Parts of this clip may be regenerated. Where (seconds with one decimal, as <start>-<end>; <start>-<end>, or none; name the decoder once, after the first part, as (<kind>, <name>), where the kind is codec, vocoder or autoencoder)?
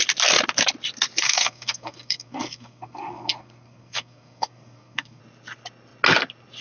1.2-5.2 (codec, SNAC)